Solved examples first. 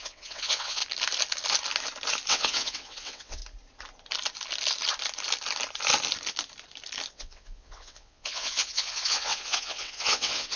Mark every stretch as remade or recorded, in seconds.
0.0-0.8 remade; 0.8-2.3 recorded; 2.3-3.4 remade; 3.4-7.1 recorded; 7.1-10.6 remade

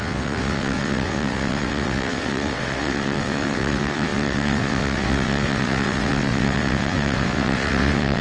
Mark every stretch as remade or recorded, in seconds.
0.0-8.2 remade

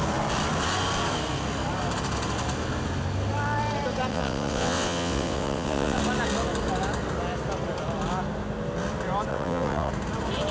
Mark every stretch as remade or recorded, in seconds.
0.0-4.1 recorded; 4.1-6.0 remade; 6.0-9.3 recorded; 9.3-9.9 remade; 9.9-10.5 recorded